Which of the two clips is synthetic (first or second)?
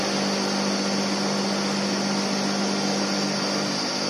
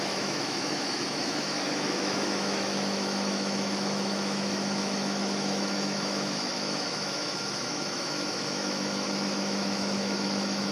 second